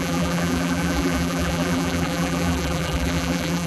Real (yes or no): no